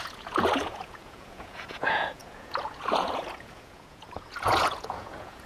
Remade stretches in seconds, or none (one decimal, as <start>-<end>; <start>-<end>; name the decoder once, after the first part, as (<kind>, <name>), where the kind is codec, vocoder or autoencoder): 0.0-5.5 (vocoder, Vocos)